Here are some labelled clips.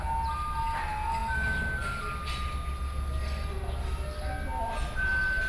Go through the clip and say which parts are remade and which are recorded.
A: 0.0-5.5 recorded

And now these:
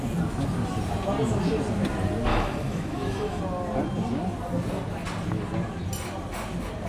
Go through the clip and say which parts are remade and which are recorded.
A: 0.0-2.3 recorded; 2.3-3.4 remade; 3.4-6.9 recorded

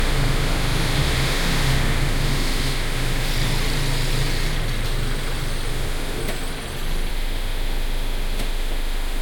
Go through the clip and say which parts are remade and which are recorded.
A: 0.0-3.3 remade; 3.3-5.7 recorded; 5.7-6.2 remade; 6.2-7.1 recorded; 7.1-9.2 remade

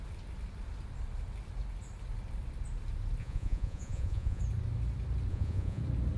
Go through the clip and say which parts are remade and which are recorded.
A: 0.0-3.2 recorded; 3.2-4.4 remade; 4.4-5.3 recorded; 5.3-5.8 remade; 5.8-6.2 recorded